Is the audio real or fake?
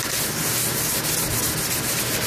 real